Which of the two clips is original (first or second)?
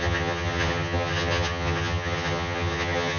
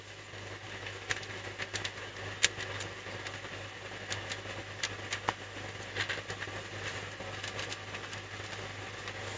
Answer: second